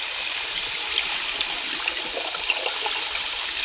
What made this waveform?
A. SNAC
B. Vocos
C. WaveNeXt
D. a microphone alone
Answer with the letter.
D